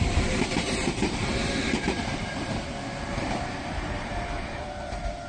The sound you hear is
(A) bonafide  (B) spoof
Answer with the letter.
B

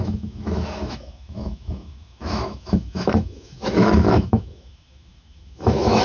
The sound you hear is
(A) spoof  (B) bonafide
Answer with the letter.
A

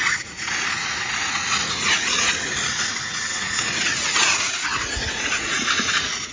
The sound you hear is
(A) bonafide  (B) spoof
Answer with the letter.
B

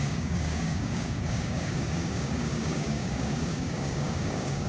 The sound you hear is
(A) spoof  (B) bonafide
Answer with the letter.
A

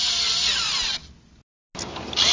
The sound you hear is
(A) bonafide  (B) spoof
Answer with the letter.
A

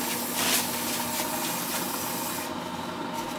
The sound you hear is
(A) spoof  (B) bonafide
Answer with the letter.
B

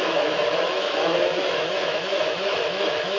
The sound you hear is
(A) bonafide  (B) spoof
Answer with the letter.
B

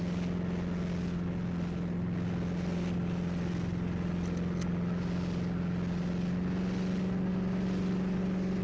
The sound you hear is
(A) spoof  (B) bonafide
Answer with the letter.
B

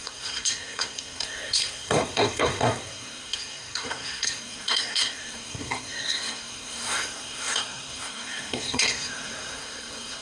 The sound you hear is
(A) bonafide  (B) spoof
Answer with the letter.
B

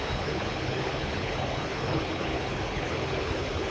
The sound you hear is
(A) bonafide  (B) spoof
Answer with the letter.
B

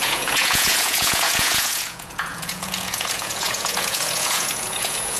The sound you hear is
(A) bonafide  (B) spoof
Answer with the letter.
B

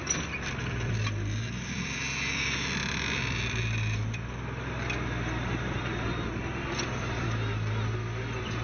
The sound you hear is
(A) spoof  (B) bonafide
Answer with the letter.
A